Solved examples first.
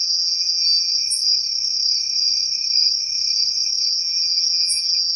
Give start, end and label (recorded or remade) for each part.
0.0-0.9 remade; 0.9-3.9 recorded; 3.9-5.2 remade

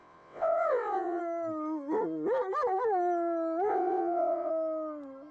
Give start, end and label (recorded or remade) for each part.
0.0-1.2 remade; 1.2-3.7 recorded; 3.7-4.5 remade; 4.5-5.3 recorded

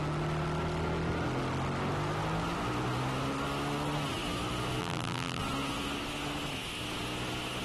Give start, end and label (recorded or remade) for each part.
0.0-4.8 recorded; 4.8-5.4 remade; 5.4-7.6 recorded

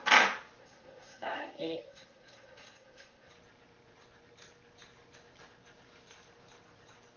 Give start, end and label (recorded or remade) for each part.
0.0-0.6 recorded; 0.6-3.3 remade; 3.3-7.2 recorded

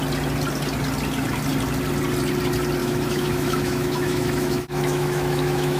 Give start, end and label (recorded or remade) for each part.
0.0-2.8 recorded; 2.8-5.8 remade

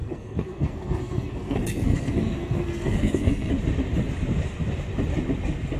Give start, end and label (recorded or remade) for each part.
0.0-3.5 remade; 3.5-5.8 recorded